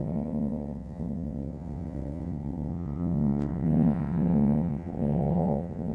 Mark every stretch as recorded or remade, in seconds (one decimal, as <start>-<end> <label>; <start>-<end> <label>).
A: 0.0-5.9 remade